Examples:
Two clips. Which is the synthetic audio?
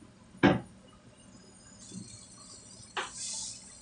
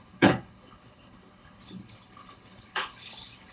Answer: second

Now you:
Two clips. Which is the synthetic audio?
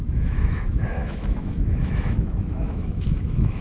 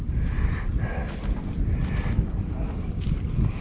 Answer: first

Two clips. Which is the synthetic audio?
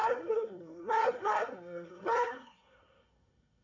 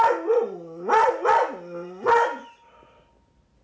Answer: first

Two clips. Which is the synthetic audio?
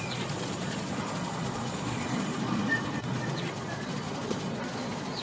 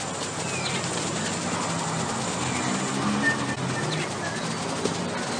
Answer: first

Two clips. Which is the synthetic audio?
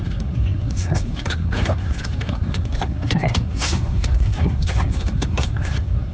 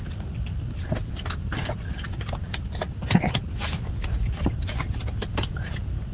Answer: first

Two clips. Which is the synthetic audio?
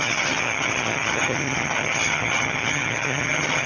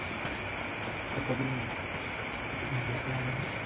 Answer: first